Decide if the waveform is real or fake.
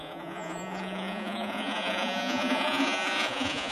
fake